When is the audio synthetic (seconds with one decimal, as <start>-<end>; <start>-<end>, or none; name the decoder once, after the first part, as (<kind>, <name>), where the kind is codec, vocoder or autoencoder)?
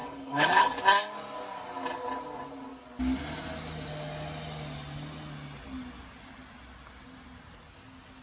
0.0-0.8 (codec, HILCodec)